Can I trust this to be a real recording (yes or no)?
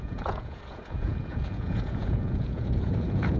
no